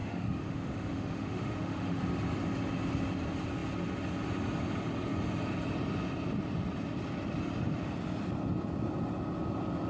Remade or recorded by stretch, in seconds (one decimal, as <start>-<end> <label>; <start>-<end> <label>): 0.0-2.0 remade; 2.0-9.9 recorded